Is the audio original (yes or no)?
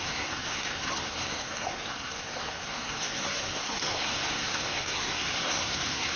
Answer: no